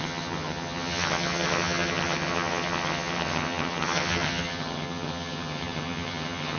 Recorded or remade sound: remade